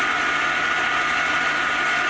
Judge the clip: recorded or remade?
recorded